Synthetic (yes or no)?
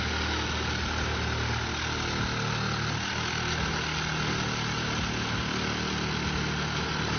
no